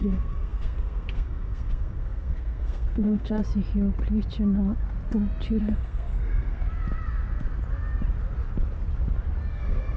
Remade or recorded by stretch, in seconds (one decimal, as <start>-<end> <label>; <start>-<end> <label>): 0.0-3.4 remade; 3.4-5.6 recorded; 5.6-6.6 remade; 6.6-9.5 recorded; 9.5-10.0 remade